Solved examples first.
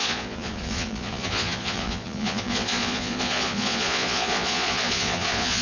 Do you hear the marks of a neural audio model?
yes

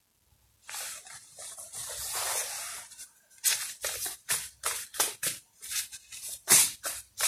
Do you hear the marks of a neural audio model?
no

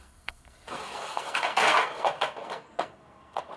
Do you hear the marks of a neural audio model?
yes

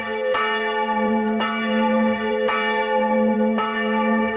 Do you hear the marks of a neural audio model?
yes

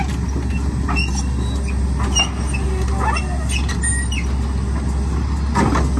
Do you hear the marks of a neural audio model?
no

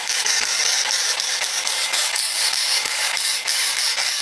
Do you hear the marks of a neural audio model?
yes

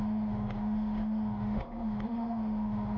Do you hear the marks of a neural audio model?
yes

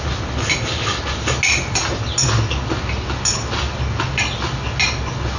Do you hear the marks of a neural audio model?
no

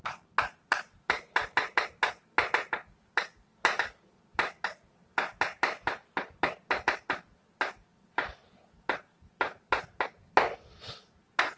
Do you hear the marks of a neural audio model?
no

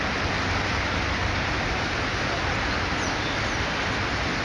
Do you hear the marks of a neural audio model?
no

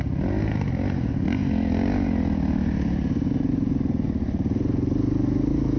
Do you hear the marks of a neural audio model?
no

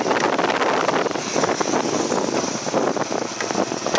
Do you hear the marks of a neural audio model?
no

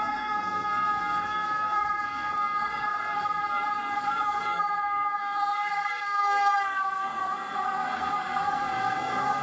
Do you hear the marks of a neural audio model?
yes